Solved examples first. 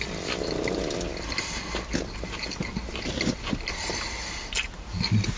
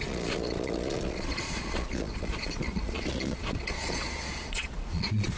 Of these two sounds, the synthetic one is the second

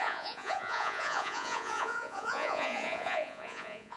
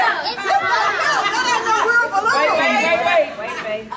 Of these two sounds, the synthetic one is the first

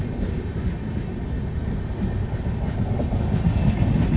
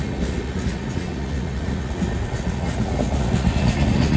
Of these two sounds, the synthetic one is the second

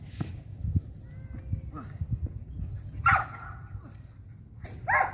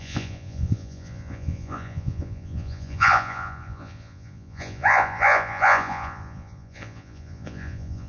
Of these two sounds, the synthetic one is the second